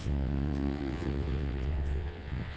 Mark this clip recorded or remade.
remade